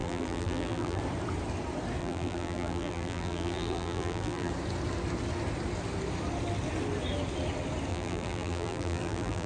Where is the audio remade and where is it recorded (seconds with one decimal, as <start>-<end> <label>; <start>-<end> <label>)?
0.0-1.0 remade; 1.0-2.0 recorded; 2.0-4.5 remade; 4.5-7.9 recorded; 7.9-9.5 remade